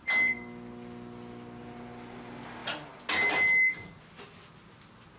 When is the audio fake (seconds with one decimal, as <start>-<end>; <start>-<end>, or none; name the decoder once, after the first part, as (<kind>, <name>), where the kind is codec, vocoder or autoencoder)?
none